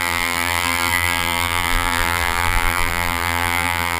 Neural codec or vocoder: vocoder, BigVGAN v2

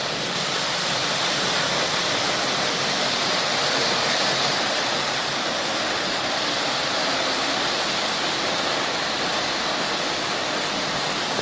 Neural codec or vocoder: none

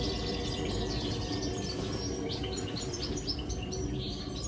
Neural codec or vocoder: none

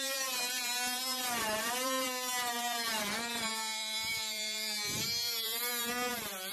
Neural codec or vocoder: vocoder, BigVGAN v2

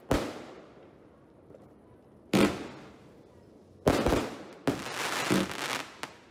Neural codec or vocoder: none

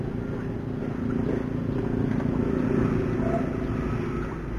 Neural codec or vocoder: none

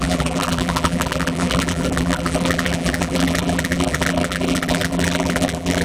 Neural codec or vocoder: vocoder, BigVGAN v2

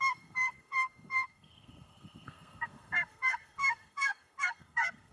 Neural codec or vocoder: codec, SNAC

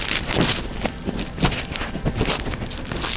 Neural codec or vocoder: none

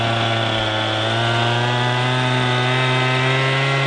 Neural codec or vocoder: none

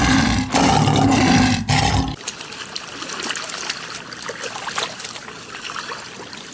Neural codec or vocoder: none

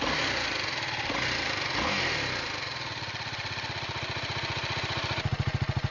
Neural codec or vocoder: none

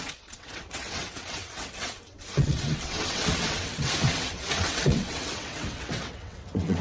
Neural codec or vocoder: vocoder, WaveNeXt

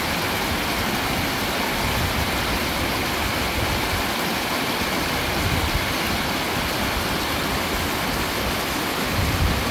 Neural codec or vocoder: none